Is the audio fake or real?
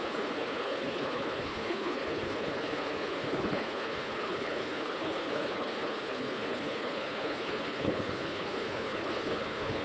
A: fake